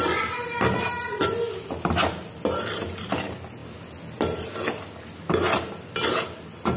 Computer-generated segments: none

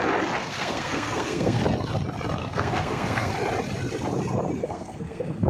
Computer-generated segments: 0.4-1.6 (codec, SNAC); 2.4-3.3; 4.6-5.5

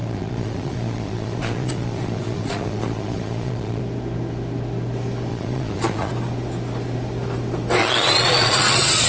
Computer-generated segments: 0.0-3.8 (vocoder, Vocos); 5.3-6.1; 7.8-9.1

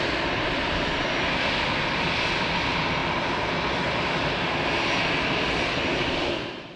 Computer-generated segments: none

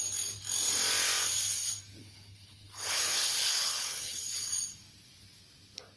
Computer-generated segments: 2.0-4.5 (codec, HILCodec)

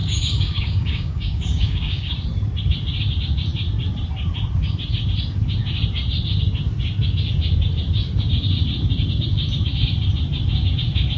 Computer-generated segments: 0.0-2.1 (codec, DAC)